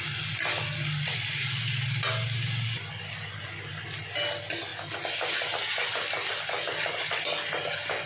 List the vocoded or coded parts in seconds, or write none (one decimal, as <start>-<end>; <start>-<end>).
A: none

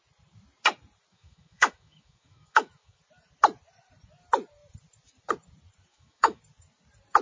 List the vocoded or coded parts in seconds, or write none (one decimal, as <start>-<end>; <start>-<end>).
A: 1.1-3.0; 5.9-6.4

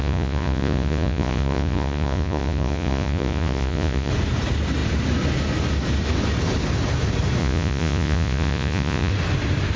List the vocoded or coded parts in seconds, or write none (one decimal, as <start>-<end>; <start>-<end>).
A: 0.0-4.1; 7.4-9.1

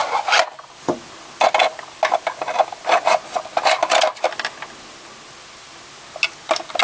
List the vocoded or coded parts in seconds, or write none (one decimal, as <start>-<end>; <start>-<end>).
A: none

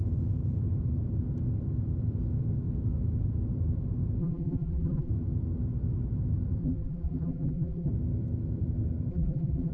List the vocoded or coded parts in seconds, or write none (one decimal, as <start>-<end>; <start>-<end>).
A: 4.2-5.1; 6.6-7.9; 9.1-9.7

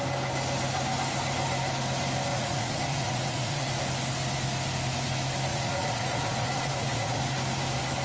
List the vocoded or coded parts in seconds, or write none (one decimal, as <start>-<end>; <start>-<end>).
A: 2.3-3.8; 5.5-7.2

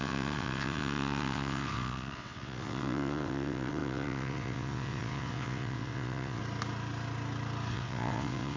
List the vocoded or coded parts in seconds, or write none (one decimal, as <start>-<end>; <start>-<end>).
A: 0.0-6.4; 7.7-8.6

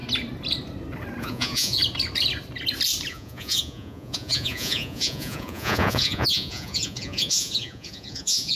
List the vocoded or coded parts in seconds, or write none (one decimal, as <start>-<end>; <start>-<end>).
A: 1.2-1.8; 3.1-8.6